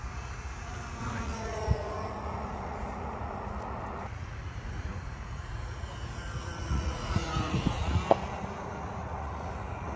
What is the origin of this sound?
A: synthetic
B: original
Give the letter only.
A